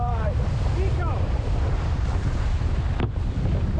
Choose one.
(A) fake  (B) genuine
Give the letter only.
B